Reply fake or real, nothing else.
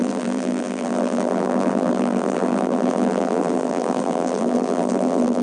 fake